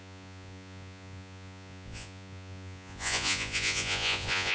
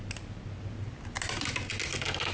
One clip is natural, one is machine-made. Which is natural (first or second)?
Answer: second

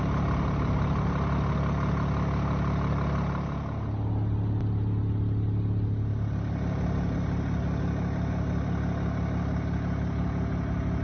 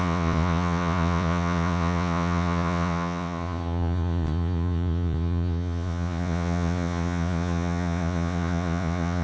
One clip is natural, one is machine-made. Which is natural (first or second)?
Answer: first